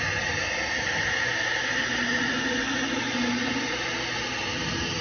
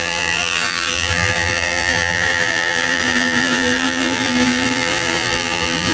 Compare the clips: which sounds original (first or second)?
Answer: first